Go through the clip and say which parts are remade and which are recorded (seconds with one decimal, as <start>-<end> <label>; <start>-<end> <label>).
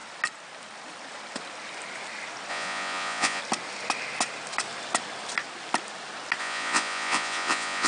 0.0-2.5 recorded; 2.5-3.4 remade; 3.4-6.4 recorded; 6.4-7.9 remade